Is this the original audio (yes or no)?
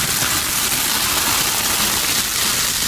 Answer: yes